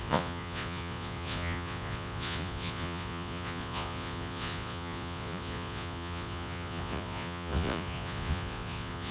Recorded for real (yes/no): no